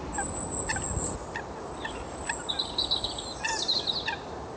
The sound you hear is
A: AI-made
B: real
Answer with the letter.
B